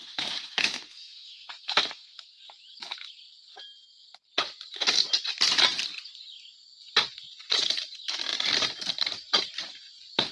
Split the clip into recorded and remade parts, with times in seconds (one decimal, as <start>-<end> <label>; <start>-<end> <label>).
0.0-2.4 remade; 2.4-10.3 recorded